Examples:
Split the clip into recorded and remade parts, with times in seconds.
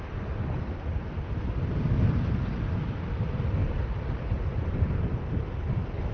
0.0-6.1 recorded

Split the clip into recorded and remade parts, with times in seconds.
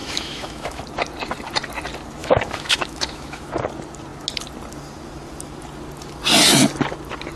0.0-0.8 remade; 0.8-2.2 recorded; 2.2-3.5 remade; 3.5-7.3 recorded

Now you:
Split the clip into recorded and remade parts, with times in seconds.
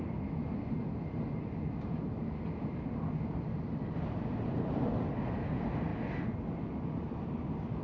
0.0-7.8 recorded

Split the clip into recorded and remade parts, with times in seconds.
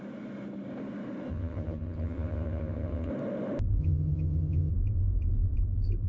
0.0-1.3 recorded; 1.3-3.1 remade; 3.1-3.8 recorded; 3.8-4.7 remade; 4.7-6.1 recorded